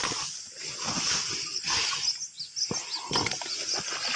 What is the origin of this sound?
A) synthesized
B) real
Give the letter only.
B